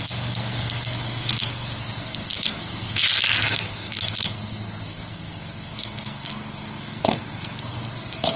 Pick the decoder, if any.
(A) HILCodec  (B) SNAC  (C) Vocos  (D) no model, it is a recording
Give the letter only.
B